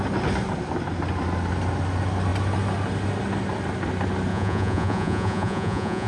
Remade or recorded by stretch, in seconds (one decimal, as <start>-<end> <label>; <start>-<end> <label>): 0.0-4.3 recorded; 4.3-6.1 remade